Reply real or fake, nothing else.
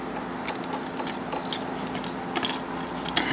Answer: real